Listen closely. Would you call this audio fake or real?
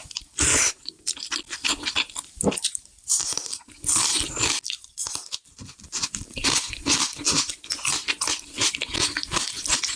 fake